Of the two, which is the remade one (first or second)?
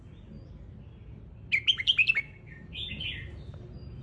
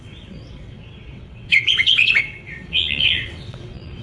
second